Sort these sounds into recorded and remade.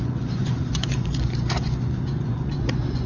remade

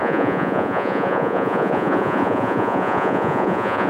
remade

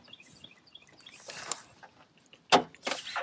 recorded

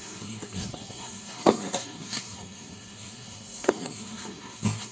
remade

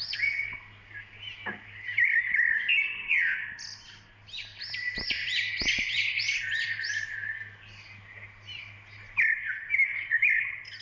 recorded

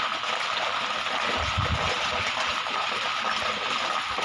recorded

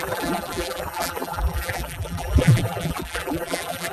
remade